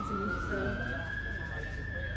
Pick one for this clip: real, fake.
fake